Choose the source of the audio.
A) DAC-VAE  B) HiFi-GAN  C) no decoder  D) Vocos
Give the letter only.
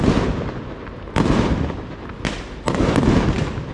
C